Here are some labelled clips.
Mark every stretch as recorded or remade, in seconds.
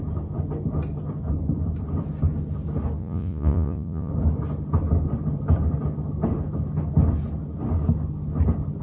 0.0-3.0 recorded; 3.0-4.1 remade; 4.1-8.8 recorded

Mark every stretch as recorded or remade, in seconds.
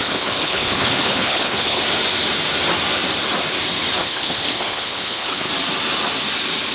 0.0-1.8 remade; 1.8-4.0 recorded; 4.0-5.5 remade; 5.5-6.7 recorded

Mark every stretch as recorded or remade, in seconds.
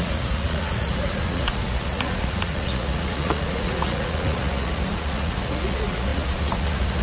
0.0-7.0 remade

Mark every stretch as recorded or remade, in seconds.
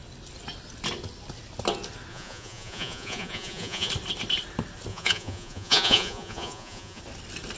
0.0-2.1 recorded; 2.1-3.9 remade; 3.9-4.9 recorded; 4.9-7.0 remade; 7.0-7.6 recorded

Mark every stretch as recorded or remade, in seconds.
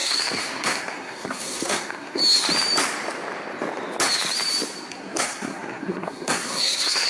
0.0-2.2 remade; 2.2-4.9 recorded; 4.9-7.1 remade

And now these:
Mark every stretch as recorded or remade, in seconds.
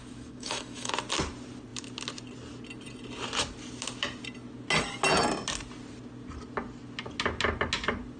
0.0-0.9 remade; 0.9-8.2 recorded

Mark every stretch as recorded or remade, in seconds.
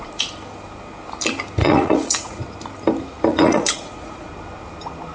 0.0-1.6 recorded; 1.6-2.4 remade; 2.4-3.3 recorded; 3.3-4.3 remade; 4.3-5.1 recorded